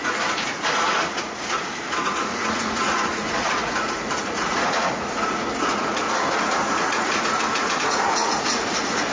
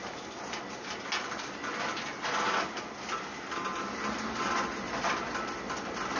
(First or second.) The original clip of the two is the second